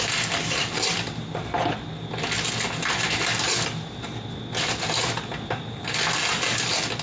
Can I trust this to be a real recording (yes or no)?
yes